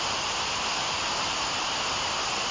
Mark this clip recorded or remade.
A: recorded